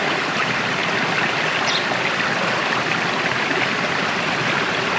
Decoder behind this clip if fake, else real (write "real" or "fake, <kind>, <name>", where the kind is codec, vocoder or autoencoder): real